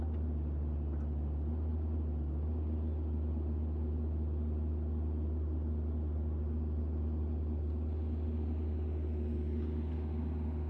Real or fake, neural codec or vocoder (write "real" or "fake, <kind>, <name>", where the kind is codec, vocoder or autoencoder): real